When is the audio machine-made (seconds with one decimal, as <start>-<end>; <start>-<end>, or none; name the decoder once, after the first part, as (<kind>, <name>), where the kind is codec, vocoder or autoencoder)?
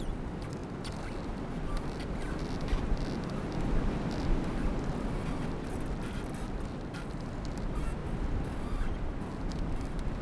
none